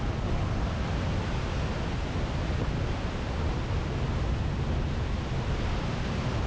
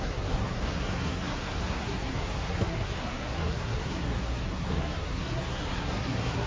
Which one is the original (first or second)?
first